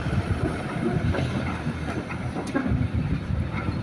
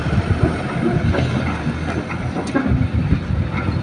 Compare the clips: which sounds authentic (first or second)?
second